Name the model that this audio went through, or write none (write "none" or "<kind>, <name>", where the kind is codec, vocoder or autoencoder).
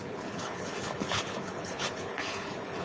codec, HILCodec